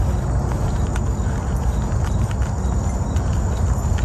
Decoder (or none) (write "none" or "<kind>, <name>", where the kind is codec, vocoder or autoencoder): none